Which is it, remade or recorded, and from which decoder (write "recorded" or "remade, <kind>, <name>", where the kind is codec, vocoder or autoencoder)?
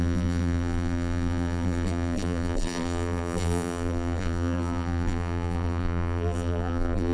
remade, vocoder, BigVGAN v2